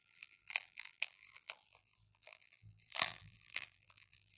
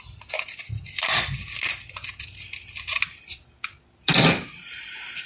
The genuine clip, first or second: second